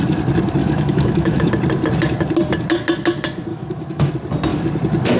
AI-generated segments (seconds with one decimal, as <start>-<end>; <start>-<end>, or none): 0.6-1.5; 3.5-4.1